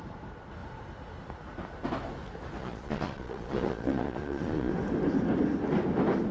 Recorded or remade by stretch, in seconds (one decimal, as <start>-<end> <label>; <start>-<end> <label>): 0.0-2.6 recorded; 2.6-4.7 remade; 4.7-6.3 recorded